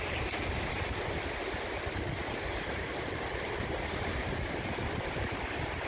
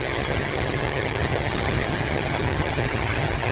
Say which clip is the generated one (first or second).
second